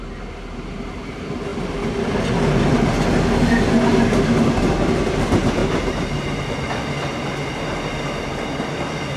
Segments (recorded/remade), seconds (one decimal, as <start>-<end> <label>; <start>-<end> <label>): 0.0-5.6 recorded; 5.6-6.4 remade; 6.4-9.2 recorded

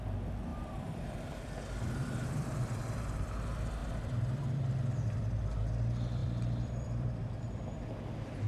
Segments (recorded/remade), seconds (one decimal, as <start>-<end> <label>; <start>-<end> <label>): 0.0-0.5 recorded; 0.5-3.0 remade; 3.0-3.8 recorded; 3.8-5.2 remade; 5.2-6.2 recorded; 6.2-7.4 remade; 7.4-8.5 recorded

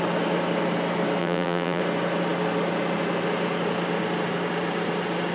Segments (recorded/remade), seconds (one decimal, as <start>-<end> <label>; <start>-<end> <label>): 0.0-1.2 recorded; 1.2-1.8 remade; 1.8-5.3 recorded

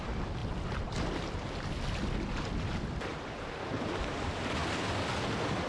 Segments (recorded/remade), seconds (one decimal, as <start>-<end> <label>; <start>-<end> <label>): 0.0-3.1 recorded; 3.1-3.7 remade; 3.7-5.7 recorded

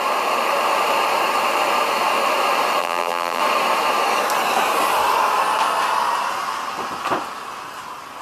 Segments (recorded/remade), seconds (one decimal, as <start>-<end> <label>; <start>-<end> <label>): 0.0-2.8 recorded; 2.8-3.4 remade; 3.4-8.2 recorded

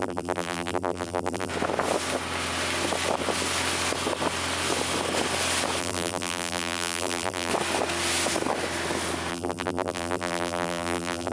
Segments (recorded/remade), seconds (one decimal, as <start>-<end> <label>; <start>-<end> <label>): 0.0-1.5 remade; 1.5-5.8 recorded; 5.8-7.5 remade; 7.5-9.3 recorded; 9.3-11.3 remade

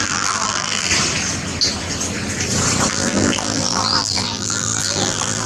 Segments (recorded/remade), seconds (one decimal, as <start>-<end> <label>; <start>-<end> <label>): 0.0-0.9 remade; 0.9-2.9 recorded; 2.9-5.5 remade

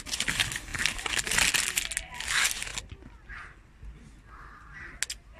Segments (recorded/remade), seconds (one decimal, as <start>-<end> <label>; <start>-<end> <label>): 0.0-5.4 recorded